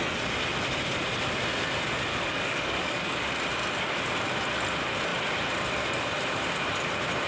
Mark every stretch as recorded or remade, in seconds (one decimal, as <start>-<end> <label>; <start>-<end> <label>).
0.0-2.1 recorded; 2.1-3.3 remade; 3.3-7.3 recorded